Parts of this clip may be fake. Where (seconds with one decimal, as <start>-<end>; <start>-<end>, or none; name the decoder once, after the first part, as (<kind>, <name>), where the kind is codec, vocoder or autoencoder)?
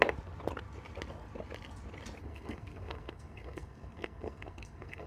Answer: 2.2-5.1 (codec, SNAC)